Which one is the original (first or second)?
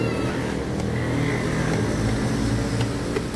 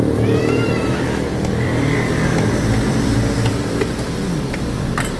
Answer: first